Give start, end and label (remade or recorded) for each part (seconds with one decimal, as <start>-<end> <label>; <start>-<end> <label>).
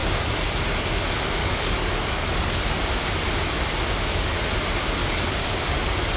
0.0-1.4 recorded; 1.4-2.9 remade; 2.9-5.0 recorded; 5.0-5.8 remade; 5.8-6.2 recorded